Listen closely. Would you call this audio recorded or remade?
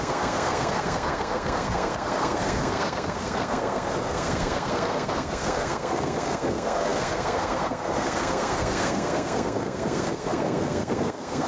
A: remade